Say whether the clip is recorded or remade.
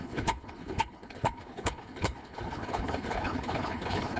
remade